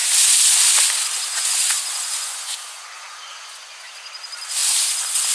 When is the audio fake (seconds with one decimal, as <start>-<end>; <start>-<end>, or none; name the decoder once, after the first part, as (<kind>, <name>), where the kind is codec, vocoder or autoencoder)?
1.3-3.9 (vocoder, Vocos)